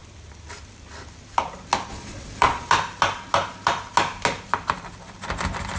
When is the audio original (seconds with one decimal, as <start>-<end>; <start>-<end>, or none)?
0.0-1.9; 2.7-5.8